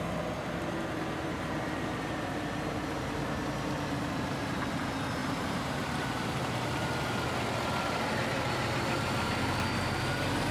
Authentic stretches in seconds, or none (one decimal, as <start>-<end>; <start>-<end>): 0.0-0.4; 4.8-5.2; 6.9-10.5